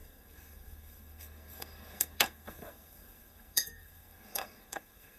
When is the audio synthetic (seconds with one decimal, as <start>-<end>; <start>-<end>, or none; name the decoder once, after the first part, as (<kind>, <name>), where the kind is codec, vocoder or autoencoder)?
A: 0.0-5.2 (codec, SNAC)